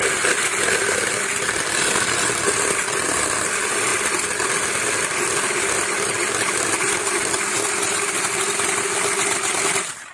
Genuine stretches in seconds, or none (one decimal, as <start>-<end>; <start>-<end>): 0.0-10.1

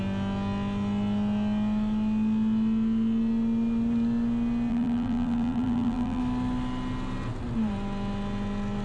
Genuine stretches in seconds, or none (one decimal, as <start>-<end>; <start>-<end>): 0.0-4.7; 6.2-8.8

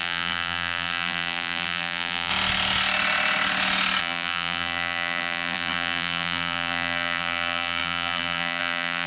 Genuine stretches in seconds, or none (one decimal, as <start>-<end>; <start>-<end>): 2.3-4.0

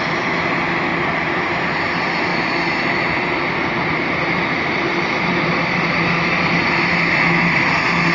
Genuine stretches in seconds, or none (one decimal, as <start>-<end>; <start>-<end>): 0.0-0.9; 1.7-2.3; 6.5-8.1

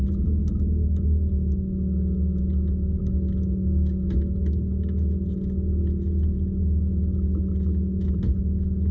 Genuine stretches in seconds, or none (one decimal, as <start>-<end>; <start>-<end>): 0.0-8.9

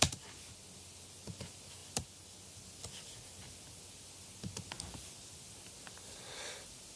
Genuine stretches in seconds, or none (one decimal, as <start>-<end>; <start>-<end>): 0.0-7.0

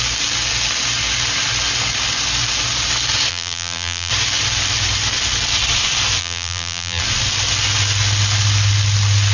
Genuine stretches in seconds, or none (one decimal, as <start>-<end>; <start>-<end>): 0.0-3.3; 4.1-6.2; 7.0-9.3